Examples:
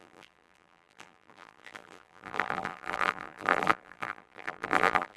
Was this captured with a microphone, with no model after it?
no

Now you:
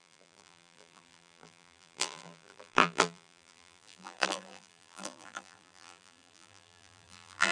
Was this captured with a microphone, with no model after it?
no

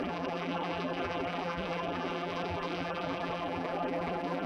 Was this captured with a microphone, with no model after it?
no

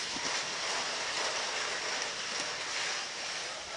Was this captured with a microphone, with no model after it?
yes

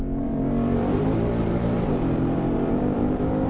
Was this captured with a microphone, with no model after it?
no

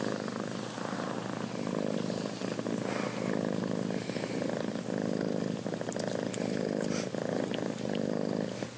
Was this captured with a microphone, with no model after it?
yes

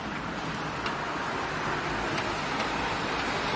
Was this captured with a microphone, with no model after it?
no